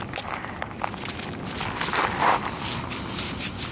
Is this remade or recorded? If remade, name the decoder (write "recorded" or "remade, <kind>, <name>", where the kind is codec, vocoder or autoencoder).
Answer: recorded